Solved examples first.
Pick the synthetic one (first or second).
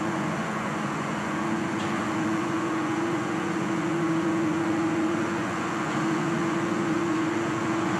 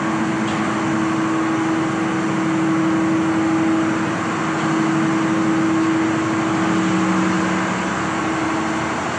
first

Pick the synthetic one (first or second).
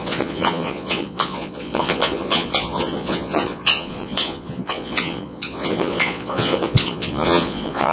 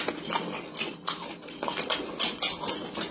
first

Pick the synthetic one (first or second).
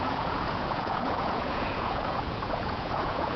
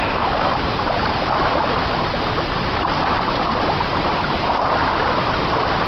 first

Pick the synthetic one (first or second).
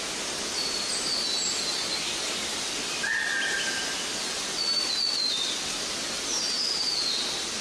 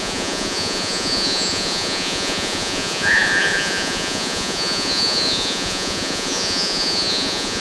second